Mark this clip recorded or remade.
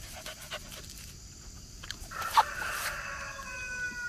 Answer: recorded